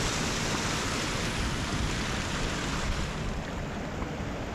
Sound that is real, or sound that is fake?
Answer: real